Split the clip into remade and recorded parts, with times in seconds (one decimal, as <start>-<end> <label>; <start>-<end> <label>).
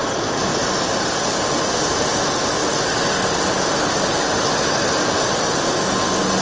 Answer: 0.0-6.4 recorded